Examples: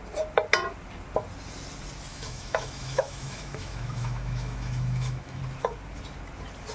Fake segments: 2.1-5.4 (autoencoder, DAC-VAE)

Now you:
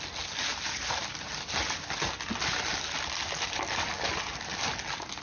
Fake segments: none

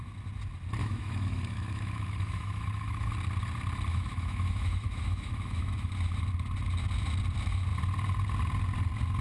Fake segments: 0.8-3.1 (autoencoder, DAC-VAE); 3.9-5.9

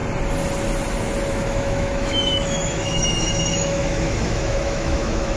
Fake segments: 1.3-5.4 (autoencoder, DAC-VAE)